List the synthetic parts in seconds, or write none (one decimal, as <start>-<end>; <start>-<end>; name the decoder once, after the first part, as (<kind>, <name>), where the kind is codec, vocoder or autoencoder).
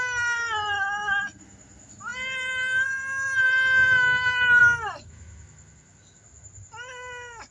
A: none